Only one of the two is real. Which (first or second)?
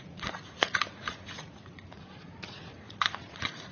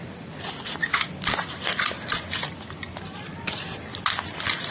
second